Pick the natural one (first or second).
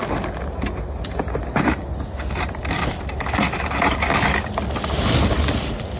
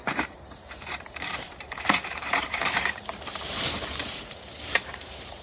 first